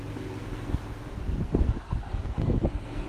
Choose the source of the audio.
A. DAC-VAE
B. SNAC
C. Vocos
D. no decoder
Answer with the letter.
B